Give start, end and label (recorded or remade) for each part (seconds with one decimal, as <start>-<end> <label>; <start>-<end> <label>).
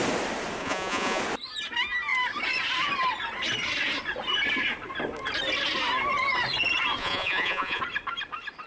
0.0-0.6 recorded; 0.6-1.2 remade; 1.2-7.0 recorded; 7.0-7.8 remade; 7.8-8.7 recorded